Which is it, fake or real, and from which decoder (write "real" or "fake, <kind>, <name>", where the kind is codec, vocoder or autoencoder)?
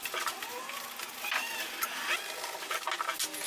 real